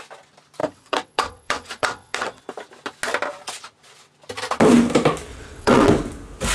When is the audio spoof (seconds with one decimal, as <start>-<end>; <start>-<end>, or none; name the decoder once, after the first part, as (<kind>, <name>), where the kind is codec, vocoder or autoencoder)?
0.6-2.4 (vocoder, WaveNeXt); 5.3-5.9